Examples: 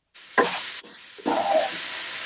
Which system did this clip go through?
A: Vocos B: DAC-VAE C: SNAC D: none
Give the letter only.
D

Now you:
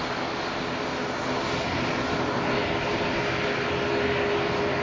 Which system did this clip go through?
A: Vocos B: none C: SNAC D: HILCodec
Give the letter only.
B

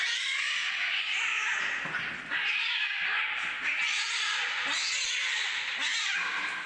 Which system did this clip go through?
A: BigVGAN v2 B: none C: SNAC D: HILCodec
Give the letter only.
B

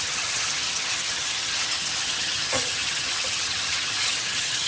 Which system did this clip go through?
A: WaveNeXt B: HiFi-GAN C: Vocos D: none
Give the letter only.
B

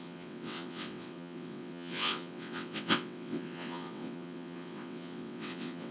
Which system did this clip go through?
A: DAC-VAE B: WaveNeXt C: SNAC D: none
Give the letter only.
B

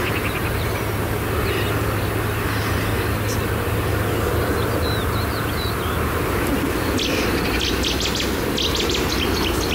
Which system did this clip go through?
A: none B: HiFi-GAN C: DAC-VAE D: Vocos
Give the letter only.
A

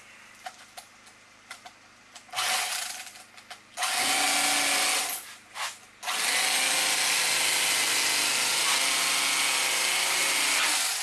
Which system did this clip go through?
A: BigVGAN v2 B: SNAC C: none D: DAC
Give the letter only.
C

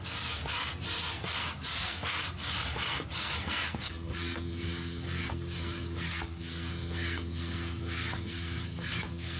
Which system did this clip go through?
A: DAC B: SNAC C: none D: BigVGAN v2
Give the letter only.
B